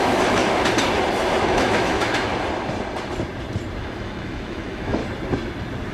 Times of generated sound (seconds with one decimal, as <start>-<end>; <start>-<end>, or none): 0.0-0.4; 1.4-2.3; 3.8-5.0